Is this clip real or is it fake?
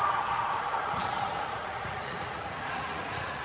fake